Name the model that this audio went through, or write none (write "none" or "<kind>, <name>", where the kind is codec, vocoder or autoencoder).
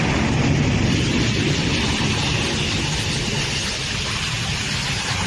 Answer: none